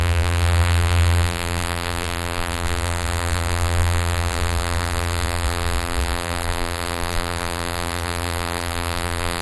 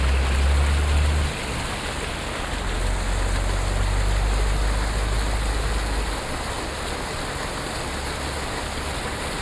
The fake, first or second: first